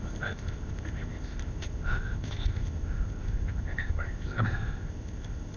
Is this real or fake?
fake